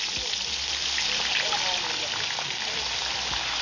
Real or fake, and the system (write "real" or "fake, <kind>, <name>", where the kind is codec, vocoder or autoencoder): real